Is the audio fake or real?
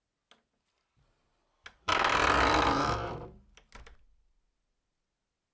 real